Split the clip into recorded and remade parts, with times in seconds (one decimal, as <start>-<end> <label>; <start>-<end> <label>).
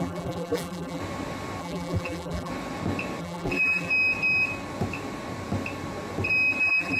0.0-1.0 remade; 1.0-1.6 recorded; 1.6-2.5 remade; 2.5-3.2 recorded; 3.2-3.9 remade; 3.9-6.6 recorded; 6.6-7.0 remade